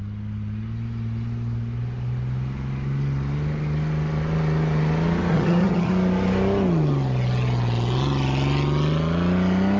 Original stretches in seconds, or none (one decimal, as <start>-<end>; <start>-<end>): 0.0-5.3; 5.9-9.8